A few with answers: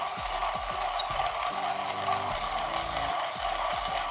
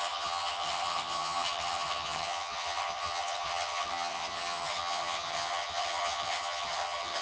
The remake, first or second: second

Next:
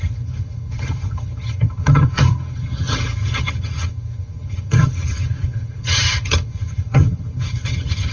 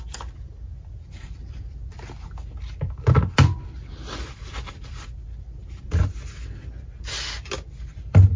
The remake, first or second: first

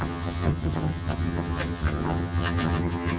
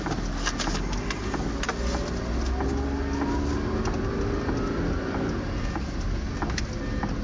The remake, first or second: first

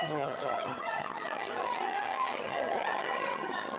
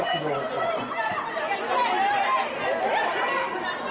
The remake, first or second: first